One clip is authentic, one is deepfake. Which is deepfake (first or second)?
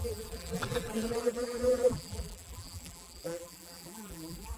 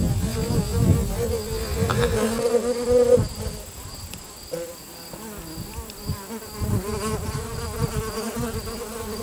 first